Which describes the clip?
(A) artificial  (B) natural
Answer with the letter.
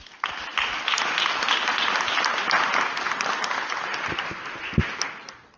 B